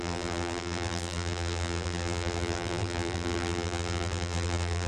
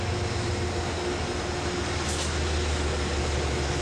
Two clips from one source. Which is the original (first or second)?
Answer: second